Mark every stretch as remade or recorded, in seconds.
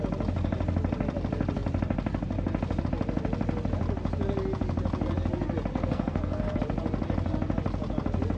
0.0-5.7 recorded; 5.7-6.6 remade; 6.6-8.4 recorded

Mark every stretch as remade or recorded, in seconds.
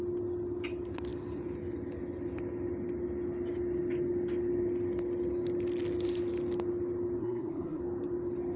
0.0-7.2 recorded; 7.2-7.8 remade; 7.8-8.6 recorded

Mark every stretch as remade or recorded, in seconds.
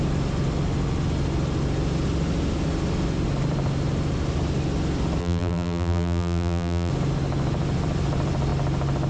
0.0-5.2 recorded; 5.2-6.9 remade; 6.9-9.1 recorded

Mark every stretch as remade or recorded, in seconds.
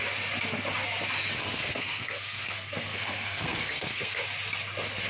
0.0-1.4 recorded; 1.4-4.2 remade; 4.2-5.1 recorded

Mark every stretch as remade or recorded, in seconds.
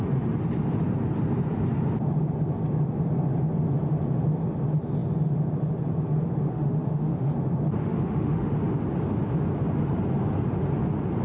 0.0-6.5 recorded; 6.5-7.3 remade; 7.3-7.8 recorded; 7.8-8.5 remade; 8.5-11.2 recorded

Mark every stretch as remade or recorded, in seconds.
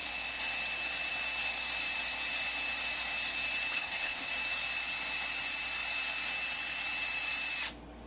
0.0-3.7 recorded; 3.7-4.3 remade; 4.3-8.1 recorded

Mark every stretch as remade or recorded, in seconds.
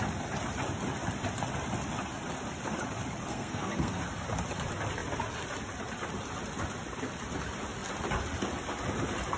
0.0-3.3 recorded; 3.3-4.0 remade; 4.0-9.4 recorded